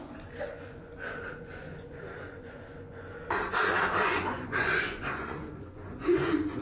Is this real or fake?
fake